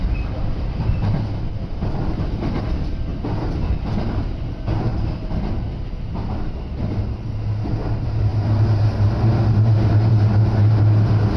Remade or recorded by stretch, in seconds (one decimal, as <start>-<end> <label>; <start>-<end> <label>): 0.0-11.4 recorded